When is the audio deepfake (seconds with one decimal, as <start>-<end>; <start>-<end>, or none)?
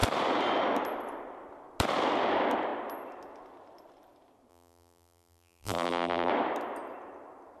4.5-6.3